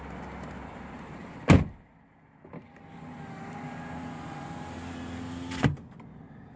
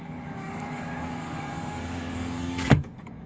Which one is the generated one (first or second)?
second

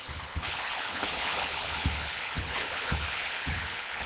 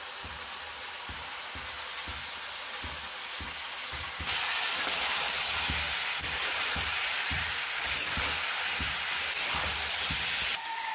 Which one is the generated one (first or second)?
first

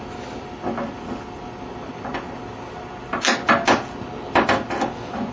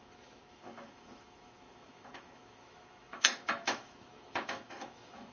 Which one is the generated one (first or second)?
second